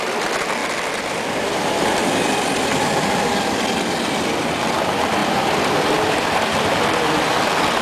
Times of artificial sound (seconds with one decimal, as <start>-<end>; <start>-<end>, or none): none